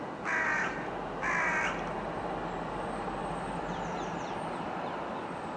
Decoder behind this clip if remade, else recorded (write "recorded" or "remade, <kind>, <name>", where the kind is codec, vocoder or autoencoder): recorded